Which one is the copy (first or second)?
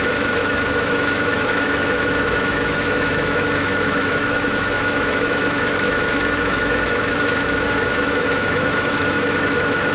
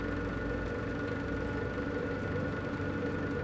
first